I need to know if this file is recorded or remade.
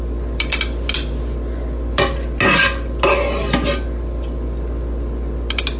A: recorded